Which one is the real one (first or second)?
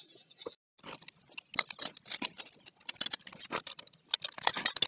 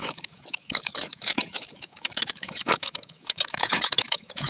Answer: first